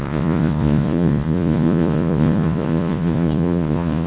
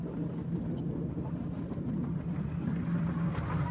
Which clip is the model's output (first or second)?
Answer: first